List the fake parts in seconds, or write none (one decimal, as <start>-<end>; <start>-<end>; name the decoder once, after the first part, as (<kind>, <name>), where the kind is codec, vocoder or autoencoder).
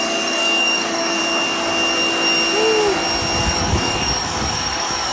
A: 0.0-1.2 (codec, DAC); 3.4-5.1